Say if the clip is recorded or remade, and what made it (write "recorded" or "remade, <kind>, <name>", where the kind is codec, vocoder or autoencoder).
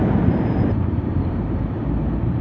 remade, vocoder, BigVGAN v2